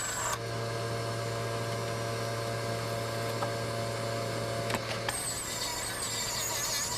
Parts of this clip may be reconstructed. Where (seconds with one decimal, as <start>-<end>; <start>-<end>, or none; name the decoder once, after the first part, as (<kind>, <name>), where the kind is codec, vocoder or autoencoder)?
none